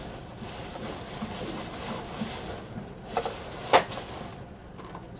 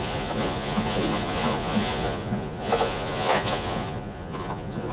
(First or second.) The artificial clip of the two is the second